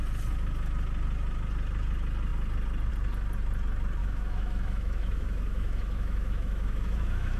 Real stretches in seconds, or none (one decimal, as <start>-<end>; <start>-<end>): 0.0-4.0